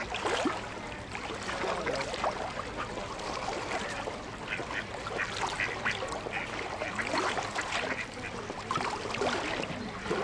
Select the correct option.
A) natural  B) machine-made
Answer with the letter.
A